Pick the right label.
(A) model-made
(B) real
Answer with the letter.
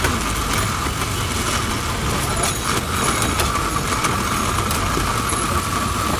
B